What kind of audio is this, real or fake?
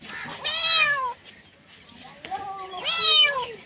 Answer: fake